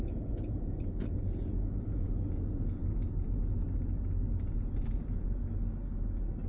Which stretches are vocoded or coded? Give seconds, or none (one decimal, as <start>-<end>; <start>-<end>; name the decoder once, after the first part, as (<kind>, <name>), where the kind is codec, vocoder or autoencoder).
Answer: 0.0-2.8 (vocoder, Vocos)